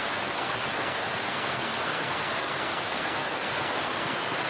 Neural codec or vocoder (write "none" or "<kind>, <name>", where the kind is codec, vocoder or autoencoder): codec, SNAC